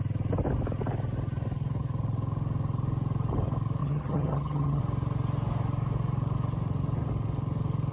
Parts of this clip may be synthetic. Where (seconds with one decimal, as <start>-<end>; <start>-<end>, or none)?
3.8-4.8